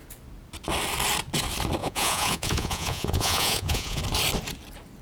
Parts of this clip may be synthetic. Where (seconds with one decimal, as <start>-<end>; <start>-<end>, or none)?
1.8-4.0